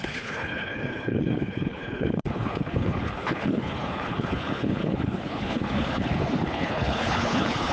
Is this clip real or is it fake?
fake